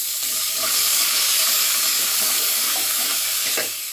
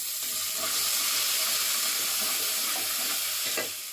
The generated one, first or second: first